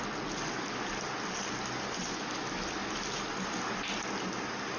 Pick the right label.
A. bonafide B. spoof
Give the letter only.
A